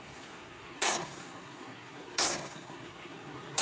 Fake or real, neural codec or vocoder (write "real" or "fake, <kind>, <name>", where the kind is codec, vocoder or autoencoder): fake, codec, SNAC